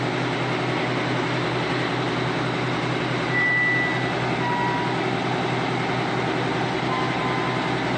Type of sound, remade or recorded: recorded